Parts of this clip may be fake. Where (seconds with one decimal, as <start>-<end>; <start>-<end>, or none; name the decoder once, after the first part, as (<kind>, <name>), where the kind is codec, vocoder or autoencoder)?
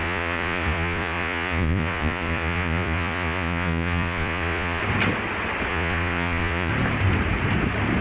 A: 0.0-4.8 (vocoder, Vocos); 5.7-6.7